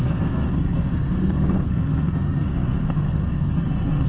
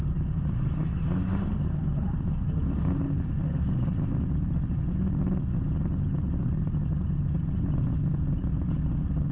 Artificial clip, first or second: first